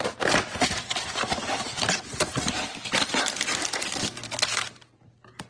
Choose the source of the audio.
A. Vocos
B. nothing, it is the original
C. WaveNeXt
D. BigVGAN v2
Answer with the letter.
B